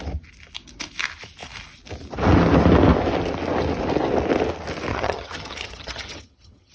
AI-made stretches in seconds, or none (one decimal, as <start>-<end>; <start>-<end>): 4.9-6.7